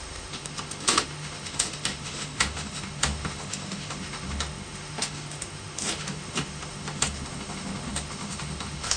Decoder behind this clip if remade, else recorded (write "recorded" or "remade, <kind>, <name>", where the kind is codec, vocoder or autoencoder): remade, autoencoder, DAC-VAE